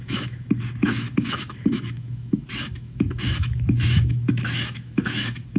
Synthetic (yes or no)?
yes